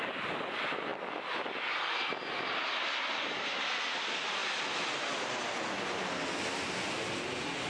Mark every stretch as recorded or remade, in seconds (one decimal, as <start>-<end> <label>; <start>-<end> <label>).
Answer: 0.0-7.7 recorded